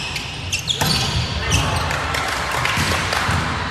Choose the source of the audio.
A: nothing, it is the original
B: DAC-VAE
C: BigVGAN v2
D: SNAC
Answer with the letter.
A